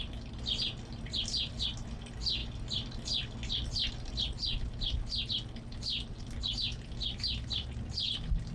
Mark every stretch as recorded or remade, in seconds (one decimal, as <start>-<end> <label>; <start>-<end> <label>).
0.0-8.5 recorded